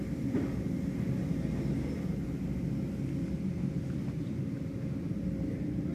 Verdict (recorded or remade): recorded